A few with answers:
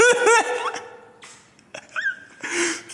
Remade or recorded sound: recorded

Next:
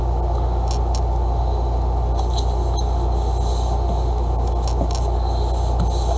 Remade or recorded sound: recorded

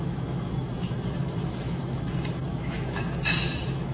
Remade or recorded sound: remade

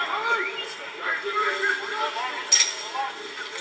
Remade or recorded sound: recorded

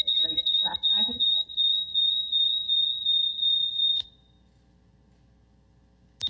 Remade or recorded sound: recorded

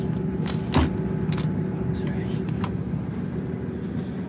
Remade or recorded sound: recorded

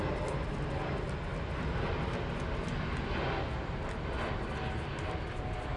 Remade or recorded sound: recorded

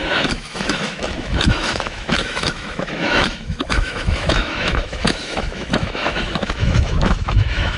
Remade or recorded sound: remade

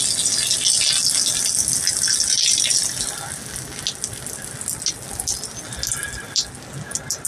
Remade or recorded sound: recorded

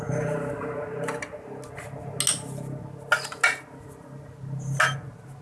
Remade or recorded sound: recorded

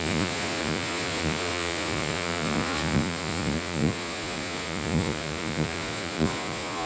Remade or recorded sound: remade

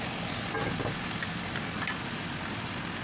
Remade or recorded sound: recorded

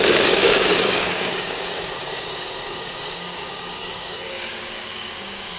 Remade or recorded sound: remade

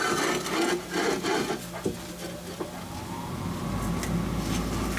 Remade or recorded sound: recorded